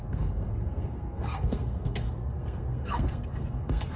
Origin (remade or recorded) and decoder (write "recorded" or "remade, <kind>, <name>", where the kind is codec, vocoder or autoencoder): remade, codec, SNAC